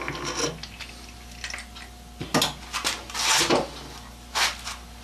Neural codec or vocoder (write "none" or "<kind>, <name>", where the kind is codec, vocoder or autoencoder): none